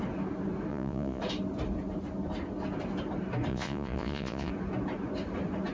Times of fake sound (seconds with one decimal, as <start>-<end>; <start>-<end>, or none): 0.7-1.2; 3.5-4.5